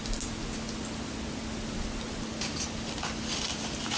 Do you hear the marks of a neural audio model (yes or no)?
no